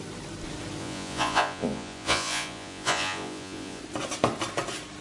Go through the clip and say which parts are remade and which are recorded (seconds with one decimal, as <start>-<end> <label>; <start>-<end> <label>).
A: 0.0-0.8 recorded; 0.8-3.8 remade; 3.8-5.0 recorded